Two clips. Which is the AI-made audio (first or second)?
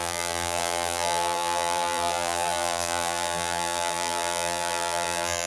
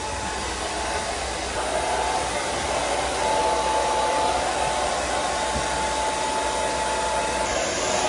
first